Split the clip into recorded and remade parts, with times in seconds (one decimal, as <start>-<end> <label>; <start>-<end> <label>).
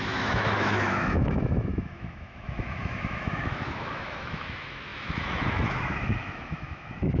0.0-7.2 remade